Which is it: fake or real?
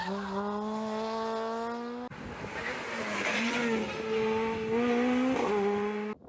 real